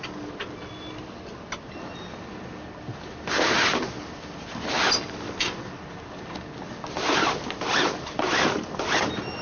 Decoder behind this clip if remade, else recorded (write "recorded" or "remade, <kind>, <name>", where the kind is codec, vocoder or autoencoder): recorded